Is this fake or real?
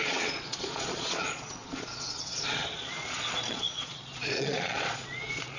fake